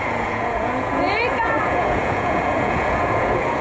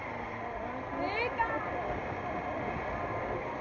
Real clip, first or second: second